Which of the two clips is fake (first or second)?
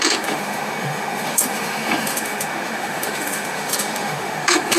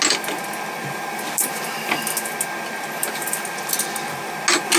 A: first